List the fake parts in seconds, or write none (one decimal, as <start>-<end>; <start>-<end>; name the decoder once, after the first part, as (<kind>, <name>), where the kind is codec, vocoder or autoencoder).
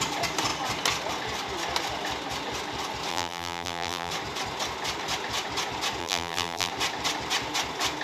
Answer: 3.1-4.1 (vocoder, BigVGAN v2); 6.0-6.7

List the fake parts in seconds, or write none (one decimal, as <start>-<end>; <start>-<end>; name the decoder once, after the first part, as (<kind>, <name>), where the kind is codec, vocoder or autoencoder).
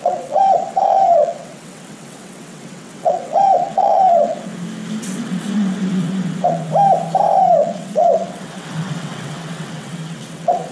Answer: 0.0-4.5 (vocoder, WaveNeXt); 5.0-6.7; 7.4-10.7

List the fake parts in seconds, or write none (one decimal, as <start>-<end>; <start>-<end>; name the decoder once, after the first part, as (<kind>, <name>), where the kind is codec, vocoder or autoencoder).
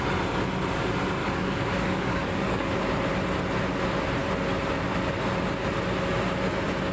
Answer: 1.2-2.8 (codec, DAC)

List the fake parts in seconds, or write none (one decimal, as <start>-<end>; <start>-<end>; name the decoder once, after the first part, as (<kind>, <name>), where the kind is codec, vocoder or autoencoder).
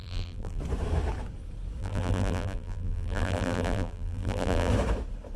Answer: 0.0-0.6 (vocoder, BigVGAN v2); 1.8-4.7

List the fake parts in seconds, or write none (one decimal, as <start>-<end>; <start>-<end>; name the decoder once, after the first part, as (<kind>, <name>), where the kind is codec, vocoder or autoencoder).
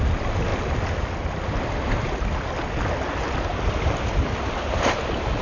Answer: none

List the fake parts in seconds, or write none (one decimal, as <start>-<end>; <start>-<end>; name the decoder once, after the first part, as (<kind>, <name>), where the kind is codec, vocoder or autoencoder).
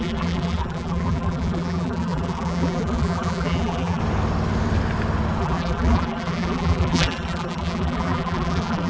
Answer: 0.0-4.0 (vocoder, BigVGAN v2); 5.4-8.9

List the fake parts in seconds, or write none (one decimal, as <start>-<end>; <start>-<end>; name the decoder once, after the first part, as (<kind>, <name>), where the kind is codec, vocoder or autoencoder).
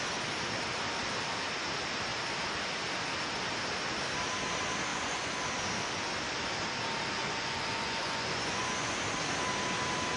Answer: 4.9-5.4 (vocoder, Vocos); 7.2-9.0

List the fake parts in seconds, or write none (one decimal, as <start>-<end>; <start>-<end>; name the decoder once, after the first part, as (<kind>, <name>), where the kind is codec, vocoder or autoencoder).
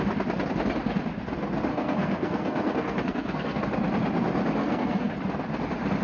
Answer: 1.7-3.6 (codec, SNAC); 4.6-5.1